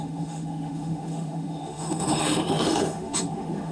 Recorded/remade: remade